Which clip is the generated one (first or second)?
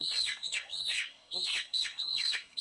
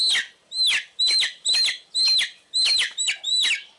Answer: first